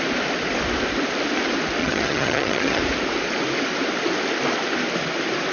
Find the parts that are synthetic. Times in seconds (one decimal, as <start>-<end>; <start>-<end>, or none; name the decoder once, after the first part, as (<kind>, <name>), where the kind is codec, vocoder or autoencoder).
1.8-2.8 (vocoder, HiFi-GAN)